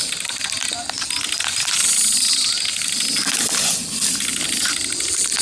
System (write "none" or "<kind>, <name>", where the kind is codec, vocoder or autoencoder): none